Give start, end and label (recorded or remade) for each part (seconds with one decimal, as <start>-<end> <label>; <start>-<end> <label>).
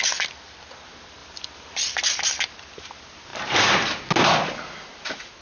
0.0-1.2 recorded; 1.2-2.2 remade; 2.2-5.4 recorded